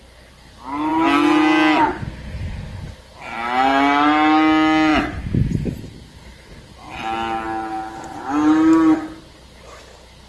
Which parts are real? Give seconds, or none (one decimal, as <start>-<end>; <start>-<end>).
0.0-10.3